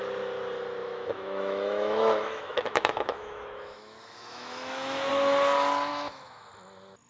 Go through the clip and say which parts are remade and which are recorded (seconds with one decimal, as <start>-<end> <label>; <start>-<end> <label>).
0.0-0.8 recorded; 0.8-5.1 remade; 5.1-5.9 recorded; 5.9-6.5 remade; 6.5-7.1 recorded

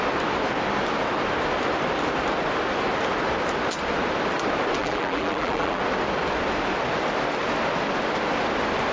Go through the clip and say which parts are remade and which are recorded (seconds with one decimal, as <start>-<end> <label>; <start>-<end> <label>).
0.0-4.8 recorded; 4.8-5.8 remade; 5.8-8.9 recorded

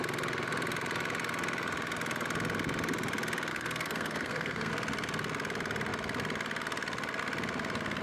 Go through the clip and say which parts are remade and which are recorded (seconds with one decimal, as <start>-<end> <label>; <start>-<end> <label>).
0.0-3.5 recorded; 3.5-4.7 remade; 4.7-8.0 recorded

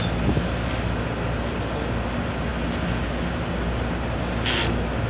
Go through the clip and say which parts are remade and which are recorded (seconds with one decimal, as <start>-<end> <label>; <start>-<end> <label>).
0.0-5.1 recorded

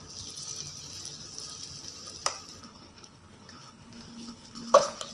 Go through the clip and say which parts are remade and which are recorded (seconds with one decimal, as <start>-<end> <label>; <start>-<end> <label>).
0.0-2.6 recorded; 2.6-5.1 remade

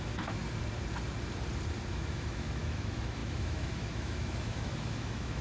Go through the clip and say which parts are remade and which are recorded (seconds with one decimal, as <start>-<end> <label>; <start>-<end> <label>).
0.0-0.4 remade; 0.4-1.9 recorded; 1.9-5.4 remade